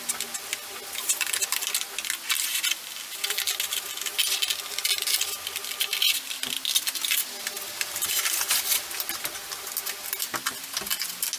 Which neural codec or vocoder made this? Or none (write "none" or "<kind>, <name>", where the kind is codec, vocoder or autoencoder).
none